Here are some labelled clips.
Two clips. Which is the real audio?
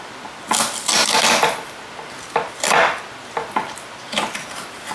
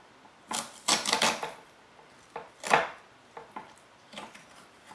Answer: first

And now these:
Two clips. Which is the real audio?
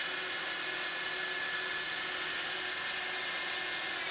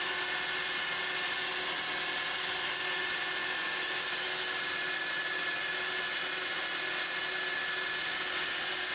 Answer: second